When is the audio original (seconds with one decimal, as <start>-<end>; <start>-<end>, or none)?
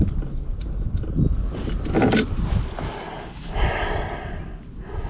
0.0-5.1